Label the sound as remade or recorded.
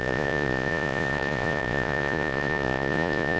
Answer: remade